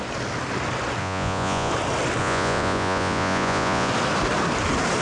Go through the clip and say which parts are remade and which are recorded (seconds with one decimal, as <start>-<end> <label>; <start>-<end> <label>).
0.0-1.0 recorded; 1.0-1.7 remade; 1.7-2.2 recorded; 2.2-3.9 remade; 3.9-5.0 recorded